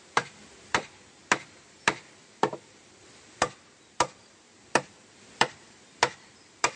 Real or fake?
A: fake